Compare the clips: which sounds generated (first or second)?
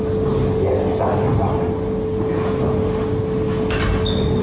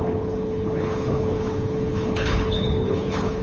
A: second